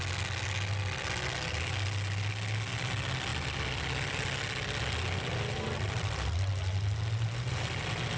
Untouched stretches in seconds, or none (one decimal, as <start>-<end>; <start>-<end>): 0.0-8.2